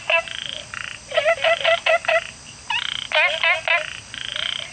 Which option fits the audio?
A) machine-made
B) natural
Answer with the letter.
B